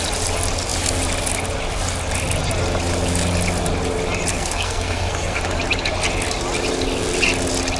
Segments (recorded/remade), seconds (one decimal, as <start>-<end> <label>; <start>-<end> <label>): 0.0-4.3 recorded; 4.3-5.4 remade; 5.4-7.8 recorded